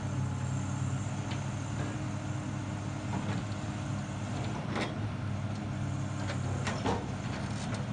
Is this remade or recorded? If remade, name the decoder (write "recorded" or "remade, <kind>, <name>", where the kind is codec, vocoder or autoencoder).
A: recorded